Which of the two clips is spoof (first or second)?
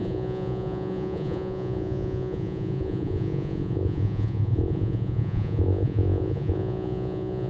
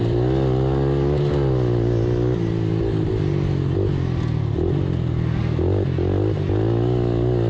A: first